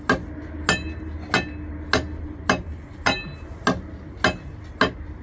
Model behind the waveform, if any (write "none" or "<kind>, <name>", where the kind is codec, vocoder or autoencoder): none